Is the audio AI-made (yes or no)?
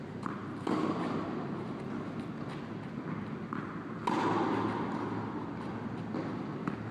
no